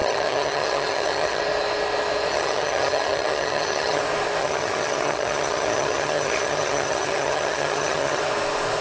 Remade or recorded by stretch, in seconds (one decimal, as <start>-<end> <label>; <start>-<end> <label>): 0.0-1.4 remade; 1.4-2.3 recorded; 2.3-4.0 remade; 4.0-4.4 recorded; 4.4-8.2 remade; 8.2-8.8 recorded